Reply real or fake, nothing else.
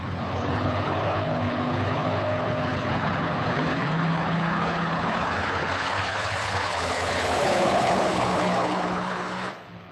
fake